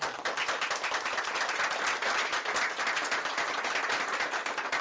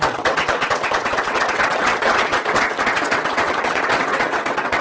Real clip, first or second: first